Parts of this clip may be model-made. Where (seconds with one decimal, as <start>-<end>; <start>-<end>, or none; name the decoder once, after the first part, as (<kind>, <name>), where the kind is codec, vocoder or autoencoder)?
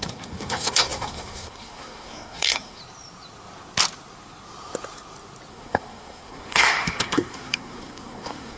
0.0-2.8 (codec, SNAC); 5.5-8.6